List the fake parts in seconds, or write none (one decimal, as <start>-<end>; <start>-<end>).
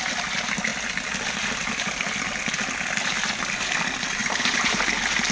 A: 4.2-4.8